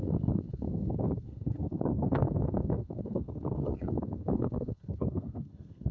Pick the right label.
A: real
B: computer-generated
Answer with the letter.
B